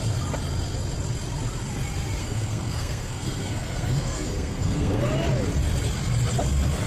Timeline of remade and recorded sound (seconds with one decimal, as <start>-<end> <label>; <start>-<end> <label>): 0.0-2.2 recorded; 2.2-5.0 remade; 5.0-6.9 recorded